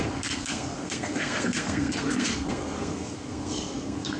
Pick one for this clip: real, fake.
fake